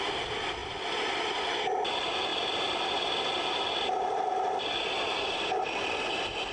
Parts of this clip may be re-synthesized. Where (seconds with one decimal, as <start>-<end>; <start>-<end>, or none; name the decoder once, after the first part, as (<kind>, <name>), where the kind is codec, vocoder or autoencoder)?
none